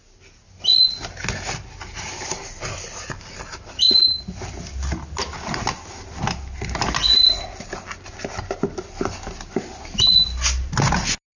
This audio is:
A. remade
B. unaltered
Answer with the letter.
B